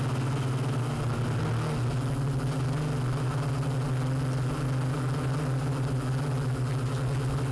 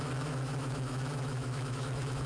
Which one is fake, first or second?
second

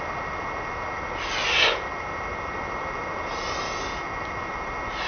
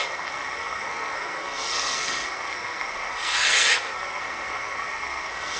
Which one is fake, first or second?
second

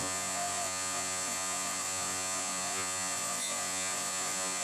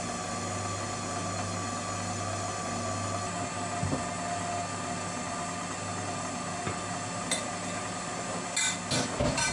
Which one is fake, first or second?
first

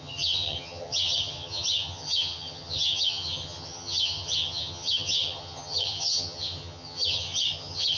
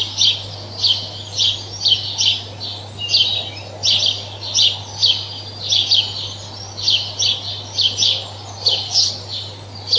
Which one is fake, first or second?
first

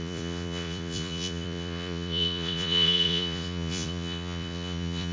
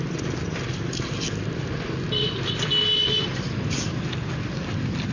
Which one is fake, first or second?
first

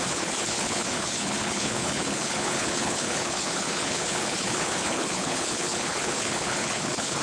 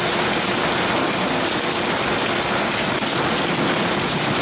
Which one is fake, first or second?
first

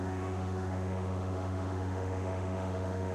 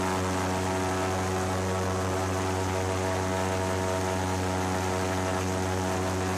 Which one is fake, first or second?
first